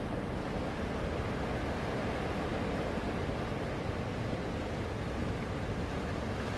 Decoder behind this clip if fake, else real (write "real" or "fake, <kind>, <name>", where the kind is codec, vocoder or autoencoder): real